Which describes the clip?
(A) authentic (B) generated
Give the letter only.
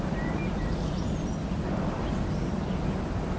A